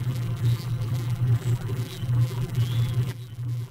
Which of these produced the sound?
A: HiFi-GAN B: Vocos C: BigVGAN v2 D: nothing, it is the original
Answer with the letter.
C